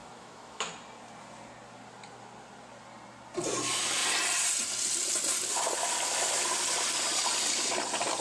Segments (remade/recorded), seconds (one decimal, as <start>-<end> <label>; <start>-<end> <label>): 0.0-0.7 remade; 0.7-8.2 recorded